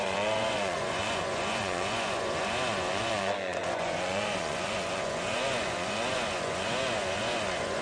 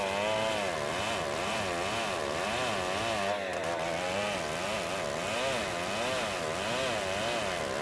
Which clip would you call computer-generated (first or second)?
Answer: first